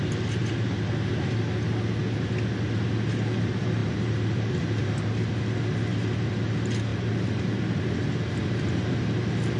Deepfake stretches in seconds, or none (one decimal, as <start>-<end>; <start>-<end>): 0.4-0.9; 3.8-5.1